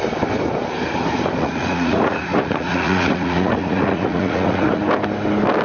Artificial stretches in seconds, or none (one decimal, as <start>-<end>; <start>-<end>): 1.4-4.8